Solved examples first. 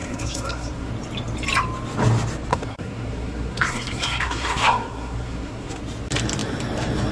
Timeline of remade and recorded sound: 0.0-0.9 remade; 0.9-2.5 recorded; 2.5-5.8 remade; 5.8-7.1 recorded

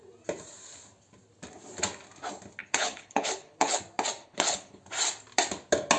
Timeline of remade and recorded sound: 0.0-2.6 recorded; 2.6-3.8 remade; 3.8-4.2 recorded; 4.2-4.8 remade; 4.8-6.0 recorded